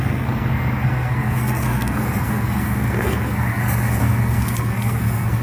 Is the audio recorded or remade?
remade